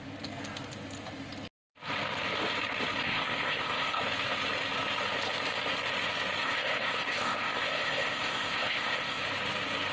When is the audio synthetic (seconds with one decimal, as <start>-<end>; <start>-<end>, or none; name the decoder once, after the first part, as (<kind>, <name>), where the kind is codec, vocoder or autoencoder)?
3.0-4.0 (codec, ZipCodec); 6.4-9.2